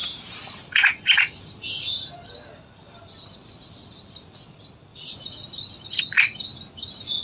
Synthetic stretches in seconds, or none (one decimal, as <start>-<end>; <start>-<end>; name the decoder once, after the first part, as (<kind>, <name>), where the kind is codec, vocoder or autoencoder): 0.0-2.1 (vocoder, BigVGAN v2); 4.9-5.5